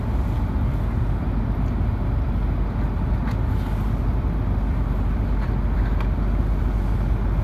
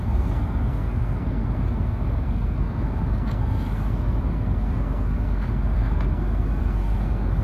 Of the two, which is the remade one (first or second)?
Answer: second